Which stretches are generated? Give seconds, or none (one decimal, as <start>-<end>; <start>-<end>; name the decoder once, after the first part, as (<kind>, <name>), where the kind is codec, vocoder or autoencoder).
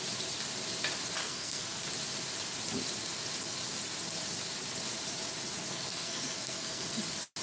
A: 1.2-1.9 (codec, SNAC); 5.7-7.0